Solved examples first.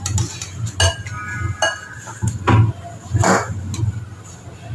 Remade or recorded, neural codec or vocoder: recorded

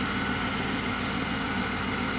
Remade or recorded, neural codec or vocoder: recorded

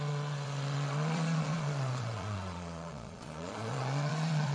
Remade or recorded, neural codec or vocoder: remade, vocoder, Vocos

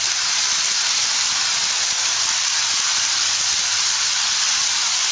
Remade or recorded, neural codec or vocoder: recorded